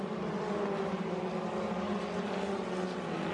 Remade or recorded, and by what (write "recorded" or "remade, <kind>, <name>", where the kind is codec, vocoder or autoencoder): recorded